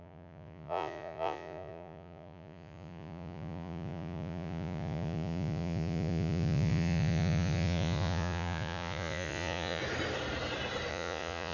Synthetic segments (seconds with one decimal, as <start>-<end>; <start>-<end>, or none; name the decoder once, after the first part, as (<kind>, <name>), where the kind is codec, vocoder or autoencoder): 0.0-9.8 (vocoder, Vocos); 10.9-11.5